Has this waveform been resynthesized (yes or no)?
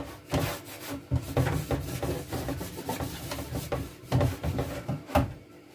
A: no